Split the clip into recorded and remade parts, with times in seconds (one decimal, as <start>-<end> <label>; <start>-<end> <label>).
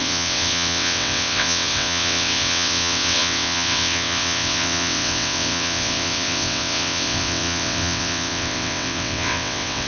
0.0-9.9 remade